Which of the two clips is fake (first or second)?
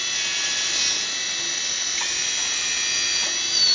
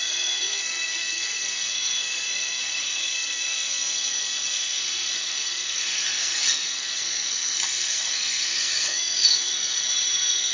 second